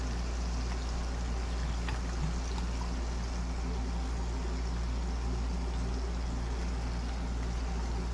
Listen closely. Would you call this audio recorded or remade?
recorded